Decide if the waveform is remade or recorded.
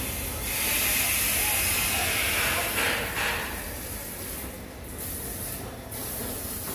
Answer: recorded